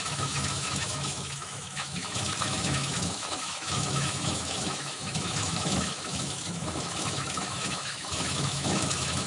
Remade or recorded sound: remade